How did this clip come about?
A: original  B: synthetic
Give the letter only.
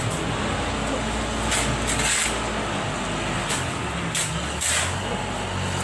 A